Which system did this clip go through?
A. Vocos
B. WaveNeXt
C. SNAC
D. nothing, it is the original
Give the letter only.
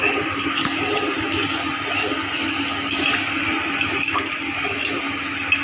D